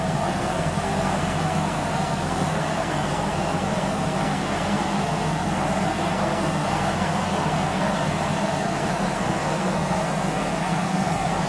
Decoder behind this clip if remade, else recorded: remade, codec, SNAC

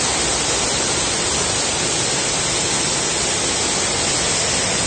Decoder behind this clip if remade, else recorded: recorded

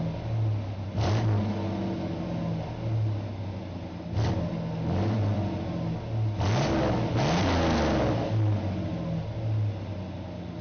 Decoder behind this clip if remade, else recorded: recorded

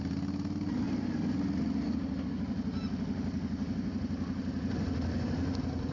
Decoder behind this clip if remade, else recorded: recorded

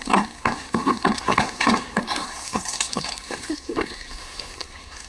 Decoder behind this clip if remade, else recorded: remade, codec, SNAC